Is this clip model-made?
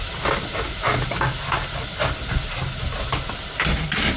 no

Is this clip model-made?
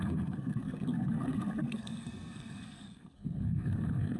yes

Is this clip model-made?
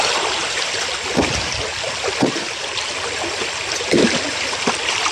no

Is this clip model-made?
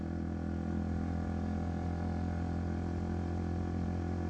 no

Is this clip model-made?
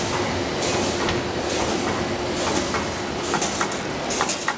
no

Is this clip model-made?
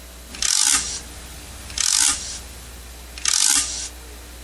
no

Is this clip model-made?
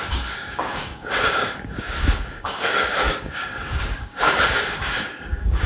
yes